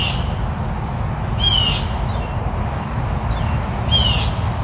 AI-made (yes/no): no